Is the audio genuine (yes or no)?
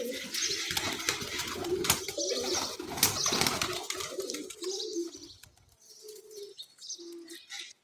yes